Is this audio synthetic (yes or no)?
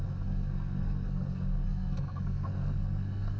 yes